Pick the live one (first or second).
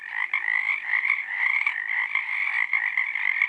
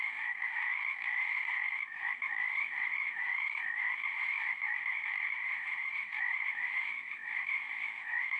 first